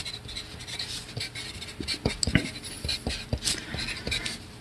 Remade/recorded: recorded